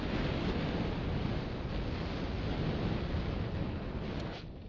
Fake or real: real